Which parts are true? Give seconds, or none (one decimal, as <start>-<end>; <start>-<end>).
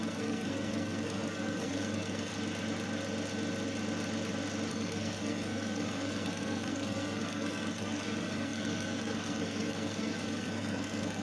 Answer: 2.3-4.7